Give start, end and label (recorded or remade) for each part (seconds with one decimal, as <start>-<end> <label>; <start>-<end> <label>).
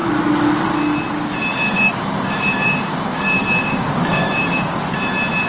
0.0-1.5 recorded; 1.5-4.8 remade; 4.8-5.5 recorded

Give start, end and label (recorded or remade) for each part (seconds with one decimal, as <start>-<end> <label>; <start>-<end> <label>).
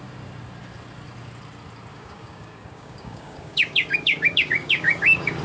0.0-1.9 recorded; 1.9-5.4 remade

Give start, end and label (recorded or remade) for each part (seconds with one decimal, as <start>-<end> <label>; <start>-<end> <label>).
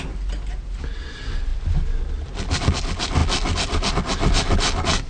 0.0-5.1 recorded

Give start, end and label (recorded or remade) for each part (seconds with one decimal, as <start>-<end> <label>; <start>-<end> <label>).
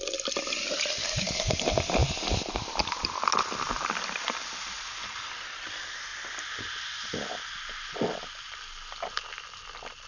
0.0-1.0 recorded; 1.0-1.5 remade; 1.5-10.1 recorded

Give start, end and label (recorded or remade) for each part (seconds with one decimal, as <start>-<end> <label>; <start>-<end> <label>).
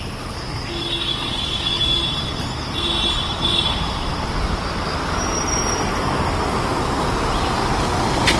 0.0-0.5 recorded; 0.5-2.0 remade; 2.0-8.4 recorded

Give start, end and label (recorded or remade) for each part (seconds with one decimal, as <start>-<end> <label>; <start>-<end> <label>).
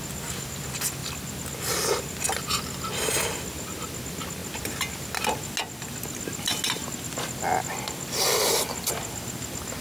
0.0-9.8 recorded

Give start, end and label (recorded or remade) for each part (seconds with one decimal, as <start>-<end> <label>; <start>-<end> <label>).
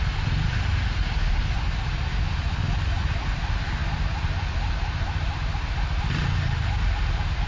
0.0-7.5 recorded